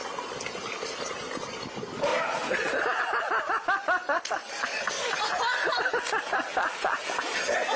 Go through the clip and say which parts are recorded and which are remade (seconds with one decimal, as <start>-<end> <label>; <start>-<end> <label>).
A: 0.0-7.8 recorded